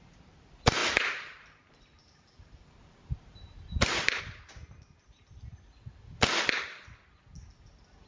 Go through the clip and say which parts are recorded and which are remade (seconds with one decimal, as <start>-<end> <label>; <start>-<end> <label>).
0.0-5.5 remade; 5.5-8.1 recorded